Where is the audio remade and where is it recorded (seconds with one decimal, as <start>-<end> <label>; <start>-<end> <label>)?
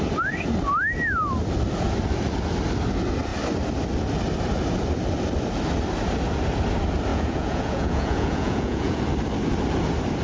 0.0-7.1 recorded; 7.1-9.0 remade; 9.0-10.2 recorded